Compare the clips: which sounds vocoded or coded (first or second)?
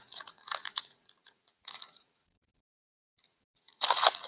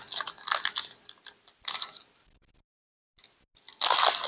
first